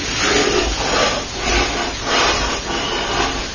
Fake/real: real